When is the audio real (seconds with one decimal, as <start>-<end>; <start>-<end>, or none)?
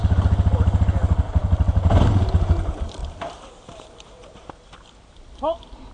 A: 0.0-3.0; 4.5-5.9